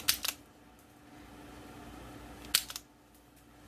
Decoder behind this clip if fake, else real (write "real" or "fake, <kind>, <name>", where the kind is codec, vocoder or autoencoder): real